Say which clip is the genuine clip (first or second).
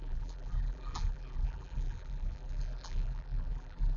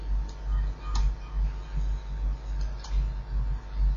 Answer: second